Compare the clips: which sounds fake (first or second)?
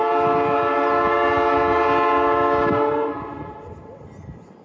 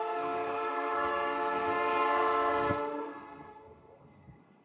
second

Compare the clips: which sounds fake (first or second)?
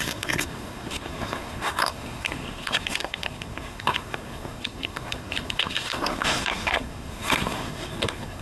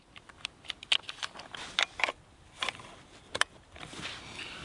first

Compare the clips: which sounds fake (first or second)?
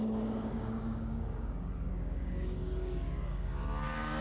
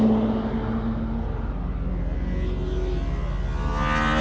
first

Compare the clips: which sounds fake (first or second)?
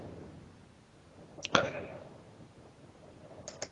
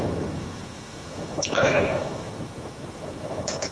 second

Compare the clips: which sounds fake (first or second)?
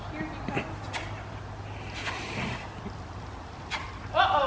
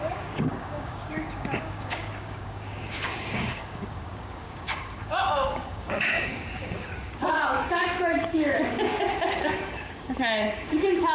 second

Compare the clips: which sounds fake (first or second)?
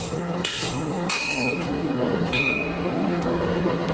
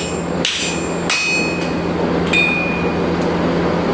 first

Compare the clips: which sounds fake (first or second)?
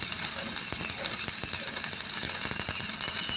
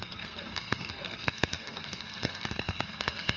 second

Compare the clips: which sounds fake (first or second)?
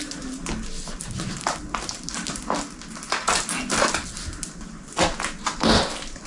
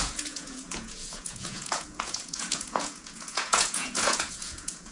second